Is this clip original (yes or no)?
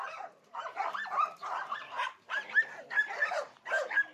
no